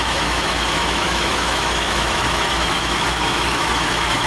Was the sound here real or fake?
fake